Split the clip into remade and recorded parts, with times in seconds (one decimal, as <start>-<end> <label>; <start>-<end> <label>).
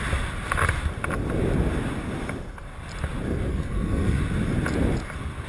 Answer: 0.0-3.5 recorded; 3.5-4.2 remade; 4.2-5.5 recorded